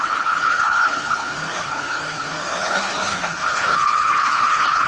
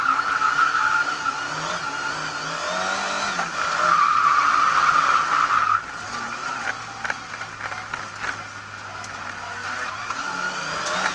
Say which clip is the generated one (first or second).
first